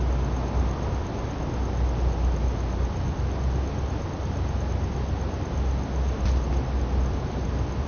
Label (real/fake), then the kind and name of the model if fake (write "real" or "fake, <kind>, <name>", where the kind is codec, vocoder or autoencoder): real